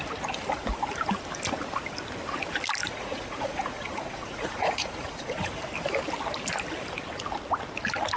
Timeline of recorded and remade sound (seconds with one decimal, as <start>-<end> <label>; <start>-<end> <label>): 0.0-2.8 recorded; 2.8-5.6 remade; 5.6-8.2 recorded